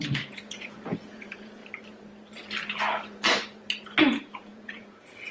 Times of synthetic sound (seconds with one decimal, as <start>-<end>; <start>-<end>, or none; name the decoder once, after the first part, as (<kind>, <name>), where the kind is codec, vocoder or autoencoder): 0.0-1.6 (vocoder, Vocos); 4.0-5.3